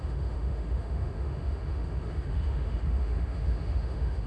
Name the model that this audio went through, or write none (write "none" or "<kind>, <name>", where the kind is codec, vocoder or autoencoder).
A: autoencoder, DAC-VAE